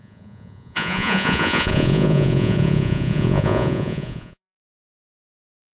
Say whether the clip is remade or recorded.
remade